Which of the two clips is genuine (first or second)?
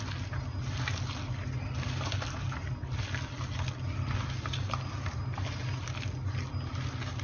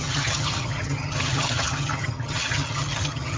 first